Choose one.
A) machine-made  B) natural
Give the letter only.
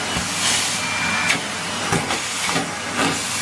B